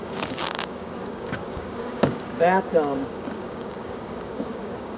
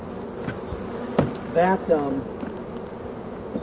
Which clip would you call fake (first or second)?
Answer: first